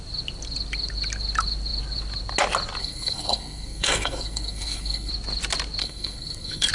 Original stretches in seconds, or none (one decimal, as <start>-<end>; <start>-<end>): 0.0-2.8; 5.1-5.8